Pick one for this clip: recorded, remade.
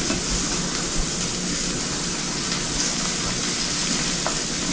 recorded